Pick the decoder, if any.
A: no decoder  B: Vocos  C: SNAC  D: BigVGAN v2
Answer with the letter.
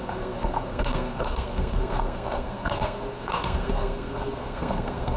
C